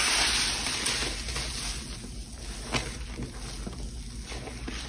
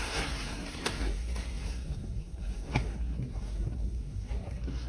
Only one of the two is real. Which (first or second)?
first